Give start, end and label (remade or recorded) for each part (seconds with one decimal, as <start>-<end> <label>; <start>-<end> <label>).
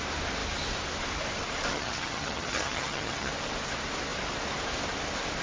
0.0-1.7 recorded; 1.7-3.3 remade; 3.3-5.4 recorded